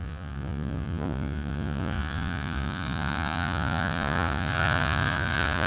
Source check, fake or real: fake